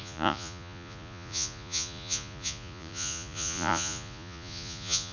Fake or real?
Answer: fake